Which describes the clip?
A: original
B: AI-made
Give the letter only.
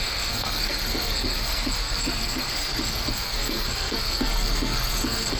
B